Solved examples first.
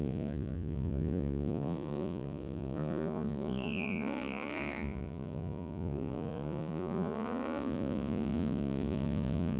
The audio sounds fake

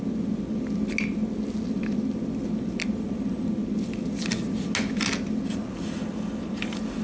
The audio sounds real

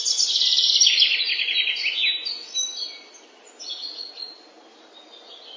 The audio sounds real